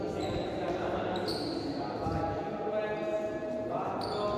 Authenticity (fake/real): real